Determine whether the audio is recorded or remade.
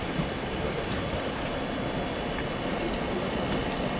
recorded